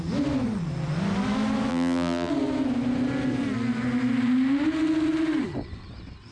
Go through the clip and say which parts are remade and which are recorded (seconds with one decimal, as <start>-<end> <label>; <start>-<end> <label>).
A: 0.0-1.7 recorded; 1.7-2.3 remade; 2.3-6.3 recorded